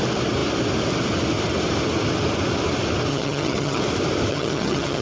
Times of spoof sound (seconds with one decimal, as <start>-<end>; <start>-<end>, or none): 3.1-3.8; 4.3-5.0